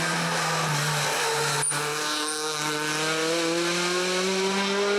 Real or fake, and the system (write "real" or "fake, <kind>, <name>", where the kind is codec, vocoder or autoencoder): real